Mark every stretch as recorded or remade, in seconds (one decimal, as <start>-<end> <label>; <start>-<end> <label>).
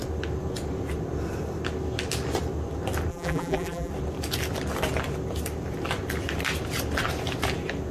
0.0-3.1 recorded; 3.1-3.9 remade; 3.9-7.9 recorded